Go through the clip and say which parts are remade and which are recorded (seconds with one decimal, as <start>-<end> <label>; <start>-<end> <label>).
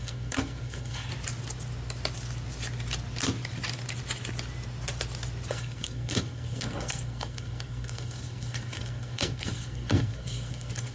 0.0-1.1 remade; 1.1-5.5 recorded; 5.5-10.9 remade